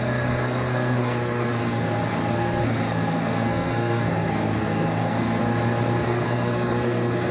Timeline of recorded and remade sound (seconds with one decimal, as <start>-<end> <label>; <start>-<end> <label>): 0.0-5.4 remade; 5.4-6.0 recorded; 6.0-7.3 remade